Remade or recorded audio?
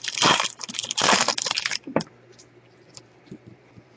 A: remade